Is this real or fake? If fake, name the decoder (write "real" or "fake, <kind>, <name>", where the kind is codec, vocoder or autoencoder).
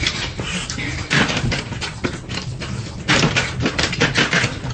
real